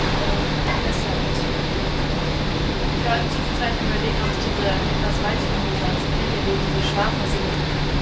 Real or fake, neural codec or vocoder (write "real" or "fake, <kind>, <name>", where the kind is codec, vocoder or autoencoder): real